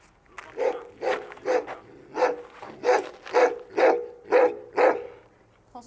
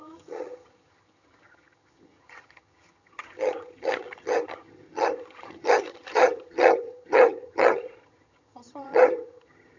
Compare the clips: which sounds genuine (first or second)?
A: first